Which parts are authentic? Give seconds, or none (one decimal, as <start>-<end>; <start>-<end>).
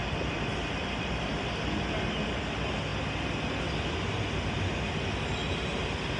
1.2-6.2